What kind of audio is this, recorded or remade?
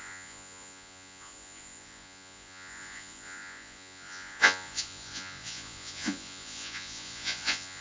remade